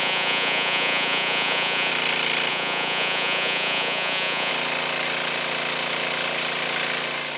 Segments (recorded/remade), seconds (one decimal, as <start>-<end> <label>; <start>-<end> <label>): 0.0-1.9 remade; 1.9-2.5 recorded; 2.5-4.5 remade; 4.5-7.4 recorded